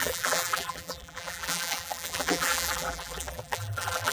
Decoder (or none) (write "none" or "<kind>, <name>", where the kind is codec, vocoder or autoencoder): vocoder, BigVGAN v2